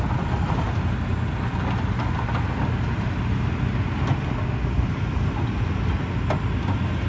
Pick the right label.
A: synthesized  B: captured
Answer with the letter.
B